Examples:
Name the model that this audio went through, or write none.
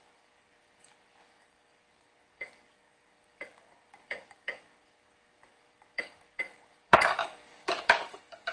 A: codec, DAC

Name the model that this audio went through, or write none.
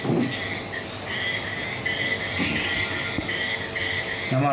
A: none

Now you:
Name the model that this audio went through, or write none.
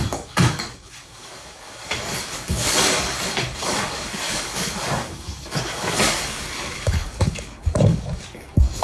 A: codec, DAC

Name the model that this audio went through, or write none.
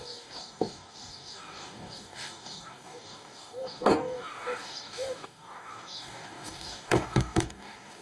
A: codec, DAC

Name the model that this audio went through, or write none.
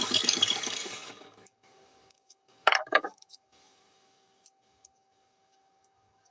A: codec, DAC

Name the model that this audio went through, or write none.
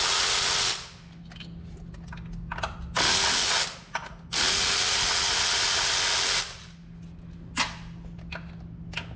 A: none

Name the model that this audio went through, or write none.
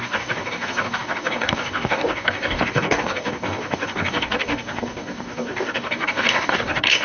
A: codec, DAC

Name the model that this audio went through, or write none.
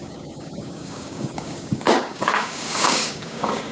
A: codec, DAC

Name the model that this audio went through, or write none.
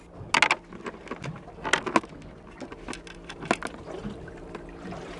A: none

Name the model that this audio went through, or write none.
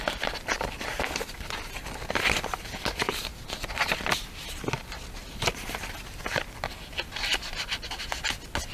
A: none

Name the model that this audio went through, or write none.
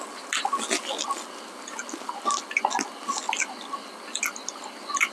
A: none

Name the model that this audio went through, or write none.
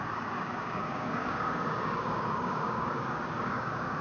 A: codec, DAC